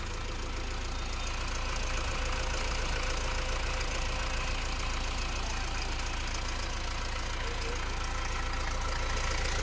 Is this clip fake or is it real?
real